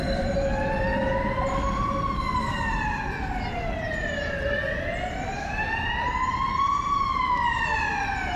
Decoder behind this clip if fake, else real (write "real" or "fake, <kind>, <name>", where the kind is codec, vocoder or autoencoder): real